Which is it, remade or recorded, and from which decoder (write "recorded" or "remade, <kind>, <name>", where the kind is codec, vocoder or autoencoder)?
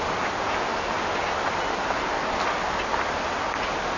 recorded